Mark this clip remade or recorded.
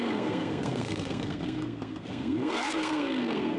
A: remade